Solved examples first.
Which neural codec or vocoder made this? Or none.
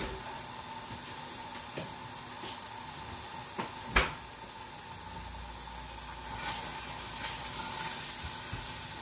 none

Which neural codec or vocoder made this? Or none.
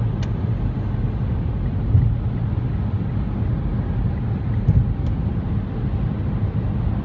none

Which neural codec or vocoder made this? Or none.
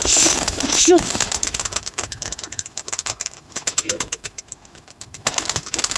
autoencoder, DAC-VAE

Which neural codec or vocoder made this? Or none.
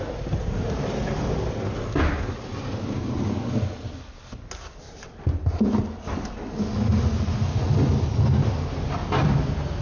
none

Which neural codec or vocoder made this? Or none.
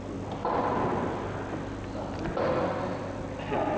none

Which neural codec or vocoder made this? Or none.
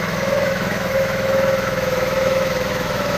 autoencoder, DAC-VAE